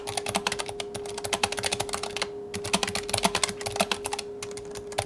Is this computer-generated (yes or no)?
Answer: no